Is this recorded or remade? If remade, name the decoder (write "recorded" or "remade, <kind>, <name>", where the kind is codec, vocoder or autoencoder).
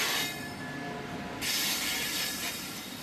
recorded